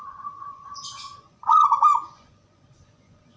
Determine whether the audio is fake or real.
fake